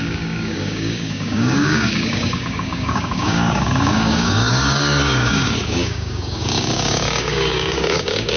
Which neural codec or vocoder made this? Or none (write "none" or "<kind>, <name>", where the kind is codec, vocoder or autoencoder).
codec, DAC